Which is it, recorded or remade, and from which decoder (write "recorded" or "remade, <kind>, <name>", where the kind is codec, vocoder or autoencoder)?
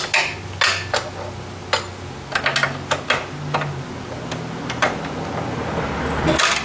recorded